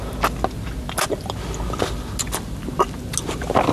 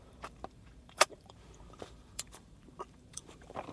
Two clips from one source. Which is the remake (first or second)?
second